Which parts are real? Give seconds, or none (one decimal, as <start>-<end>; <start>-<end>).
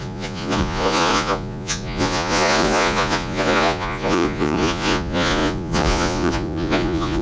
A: none